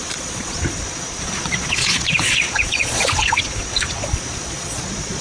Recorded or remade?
remade